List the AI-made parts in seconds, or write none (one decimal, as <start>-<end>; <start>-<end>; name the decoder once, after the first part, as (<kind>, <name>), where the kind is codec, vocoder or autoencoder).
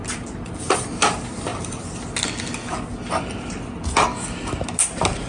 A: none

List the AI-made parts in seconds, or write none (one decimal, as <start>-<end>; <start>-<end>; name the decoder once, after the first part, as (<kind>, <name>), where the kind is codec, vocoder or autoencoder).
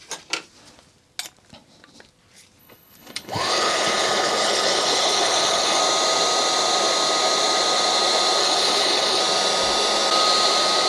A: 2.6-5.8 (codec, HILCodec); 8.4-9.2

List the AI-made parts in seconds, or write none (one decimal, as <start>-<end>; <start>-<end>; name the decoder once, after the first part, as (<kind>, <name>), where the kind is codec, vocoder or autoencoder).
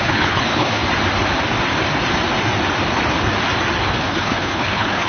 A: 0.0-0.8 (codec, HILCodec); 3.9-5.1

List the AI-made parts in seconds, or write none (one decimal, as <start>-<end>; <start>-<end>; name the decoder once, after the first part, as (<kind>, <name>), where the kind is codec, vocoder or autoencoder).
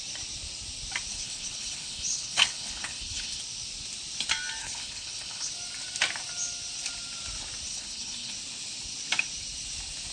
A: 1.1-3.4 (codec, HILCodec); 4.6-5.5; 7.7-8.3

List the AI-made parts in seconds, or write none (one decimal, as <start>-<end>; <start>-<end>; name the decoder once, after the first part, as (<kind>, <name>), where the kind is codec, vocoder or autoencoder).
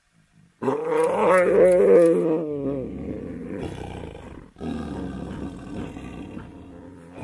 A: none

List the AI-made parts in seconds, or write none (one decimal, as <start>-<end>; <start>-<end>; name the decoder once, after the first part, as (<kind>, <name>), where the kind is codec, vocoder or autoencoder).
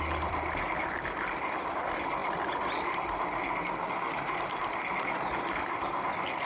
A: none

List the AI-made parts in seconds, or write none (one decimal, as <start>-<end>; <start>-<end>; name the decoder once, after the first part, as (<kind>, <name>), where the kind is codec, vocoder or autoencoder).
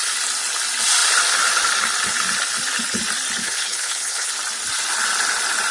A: 3.4-4.3 (codec, HILCodec)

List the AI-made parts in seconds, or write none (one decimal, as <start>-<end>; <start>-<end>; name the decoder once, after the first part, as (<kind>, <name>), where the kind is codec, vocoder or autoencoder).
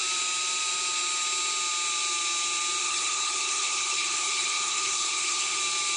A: 2.8-5.6 (codec, HILCodec)